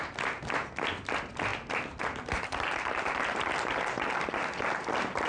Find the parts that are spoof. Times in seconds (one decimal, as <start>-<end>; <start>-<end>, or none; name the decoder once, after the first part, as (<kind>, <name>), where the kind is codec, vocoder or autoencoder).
none

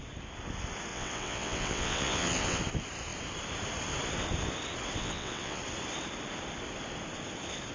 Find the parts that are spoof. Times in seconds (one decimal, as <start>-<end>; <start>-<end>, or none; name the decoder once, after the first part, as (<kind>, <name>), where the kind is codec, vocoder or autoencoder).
0.9-2.6 (vocoder, WaveNeXt); 5.0-5.6